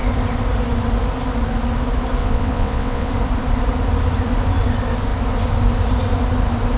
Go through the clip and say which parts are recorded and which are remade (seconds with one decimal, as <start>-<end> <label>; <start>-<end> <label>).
0.0-2.2 recorded; 2.2-3.1 remade; 3.1-6.8 recorded